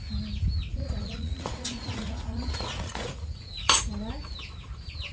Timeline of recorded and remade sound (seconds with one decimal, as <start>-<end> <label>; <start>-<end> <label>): 0.0-0.7 recorded; 0.7-3.8 remade; 3.8-5.1 recorded